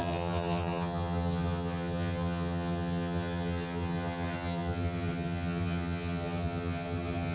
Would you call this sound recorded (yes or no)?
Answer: no